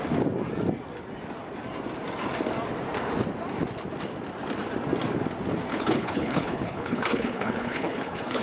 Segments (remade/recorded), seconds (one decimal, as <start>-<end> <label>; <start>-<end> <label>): 0.0-5.7 recorded; 5.7-8.4 remade